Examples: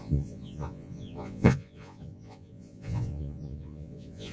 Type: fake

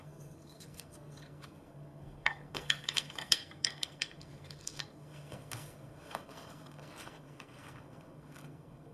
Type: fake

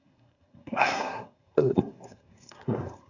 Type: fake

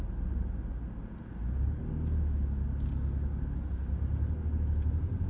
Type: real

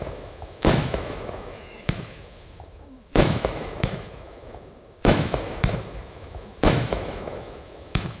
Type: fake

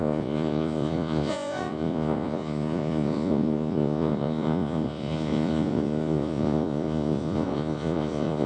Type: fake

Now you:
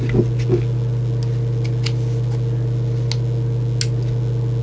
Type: real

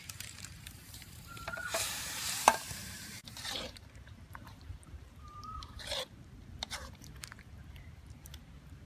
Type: fake